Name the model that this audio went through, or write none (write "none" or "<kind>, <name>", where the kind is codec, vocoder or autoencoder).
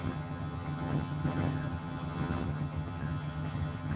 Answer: vocoder, HiFi-GAN